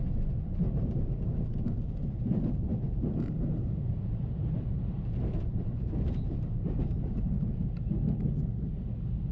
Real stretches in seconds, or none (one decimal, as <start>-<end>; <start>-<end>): 0.0-2.7; 7.8-9.3